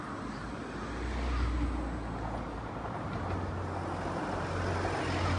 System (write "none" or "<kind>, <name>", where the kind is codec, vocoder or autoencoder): none